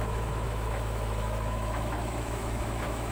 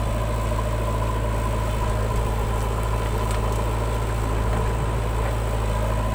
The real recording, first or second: second